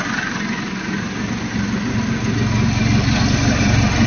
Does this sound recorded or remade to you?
recorded